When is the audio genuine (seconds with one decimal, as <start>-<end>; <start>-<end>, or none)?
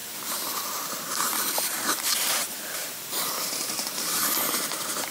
none